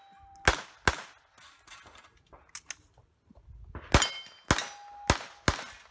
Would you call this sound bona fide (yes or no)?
yes